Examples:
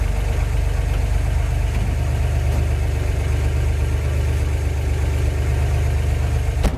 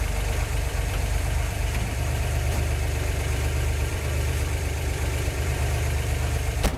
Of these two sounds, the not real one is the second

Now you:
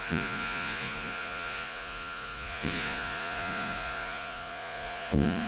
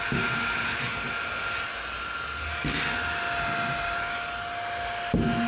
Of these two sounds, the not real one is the first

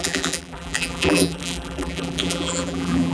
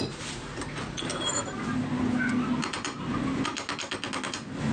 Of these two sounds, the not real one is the first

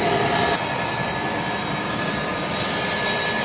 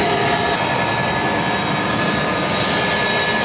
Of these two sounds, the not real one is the first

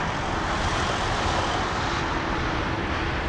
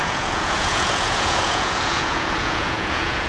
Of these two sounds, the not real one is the second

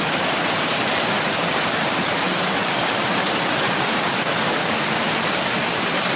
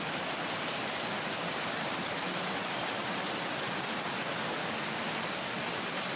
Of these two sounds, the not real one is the first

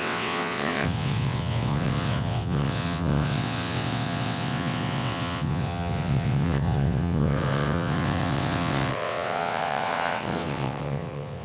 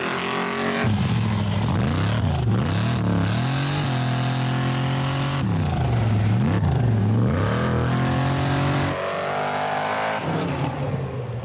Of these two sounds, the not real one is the first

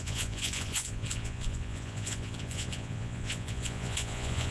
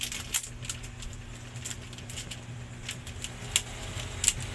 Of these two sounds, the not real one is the first